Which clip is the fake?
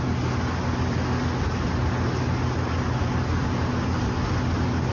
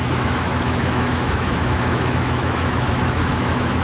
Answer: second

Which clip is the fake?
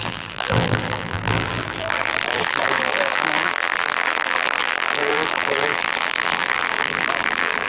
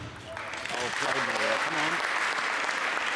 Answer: first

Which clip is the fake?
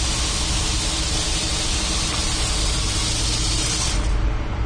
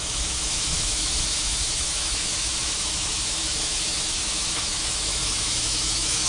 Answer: second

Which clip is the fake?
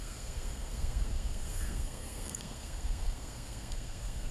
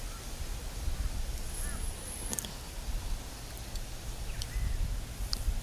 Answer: first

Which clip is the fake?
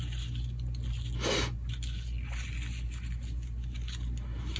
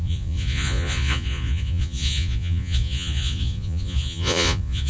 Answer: second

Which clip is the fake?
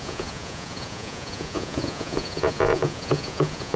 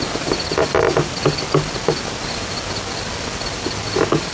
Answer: first